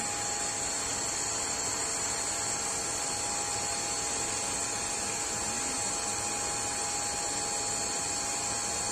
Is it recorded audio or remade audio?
recorded